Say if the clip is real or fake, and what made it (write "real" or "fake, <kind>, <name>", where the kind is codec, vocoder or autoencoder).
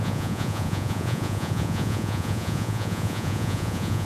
fake, vocoder, Vocos